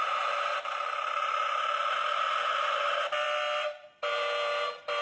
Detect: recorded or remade recorded